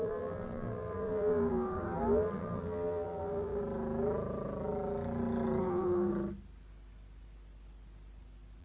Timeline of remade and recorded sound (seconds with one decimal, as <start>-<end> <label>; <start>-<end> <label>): 0.0-3.6 remade; 3.6-5.6 recorded; 5.6-6.1 remade; 6.1-8.6 recorded

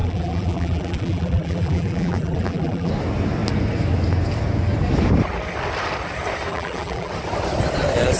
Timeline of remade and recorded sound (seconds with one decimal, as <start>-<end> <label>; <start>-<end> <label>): 0.0-2.9 remade; 2.9-6.5 recorded; 6.5-7.1 remade; 7.1-8.2 recorded

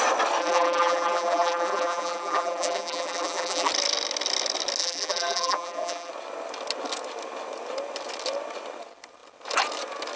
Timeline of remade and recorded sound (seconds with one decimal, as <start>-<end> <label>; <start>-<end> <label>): 0.0-0.4 recorded; 0.4-3.7 remade; 3.7-4.8 recorded; 4.8-6.1 remade; 6.1-10.2 recorded